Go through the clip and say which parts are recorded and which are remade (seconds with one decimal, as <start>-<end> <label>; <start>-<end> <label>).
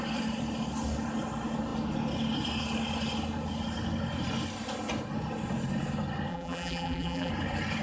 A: 0.0-6.3 recorded; 6.3-7.3 remade; 7.3-7.8 recorded